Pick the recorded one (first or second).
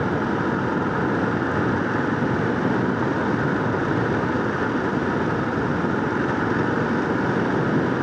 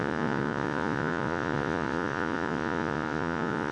first